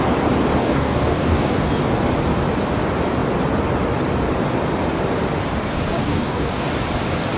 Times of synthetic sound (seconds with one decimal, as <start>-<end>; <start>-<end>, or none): 0.6-1.7; 6.0-6.7